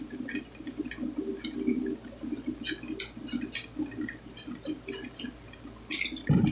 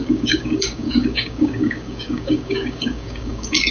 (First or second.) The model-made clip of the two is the second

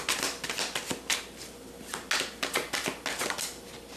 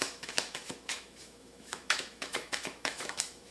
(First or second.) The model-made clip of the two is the second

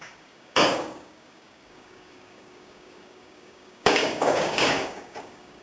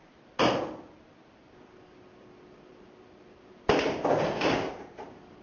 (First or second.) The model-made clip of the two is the first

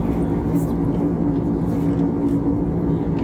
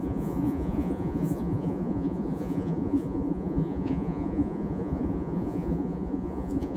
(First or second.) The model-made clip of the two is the second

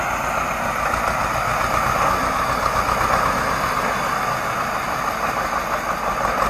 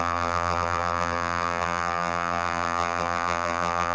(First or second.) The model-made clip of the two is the second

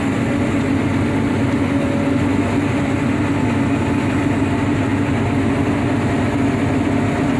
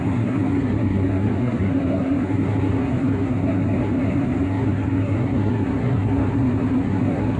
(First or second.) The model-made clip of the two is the second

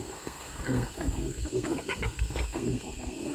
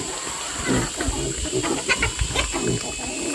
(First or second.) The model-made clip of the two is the first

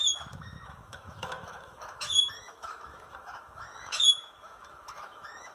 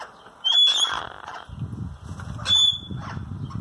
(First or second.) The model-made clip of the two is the first